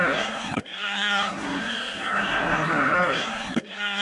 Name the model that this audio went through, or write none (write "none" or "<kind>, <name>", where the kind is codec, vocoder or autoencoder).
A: codec, SNAC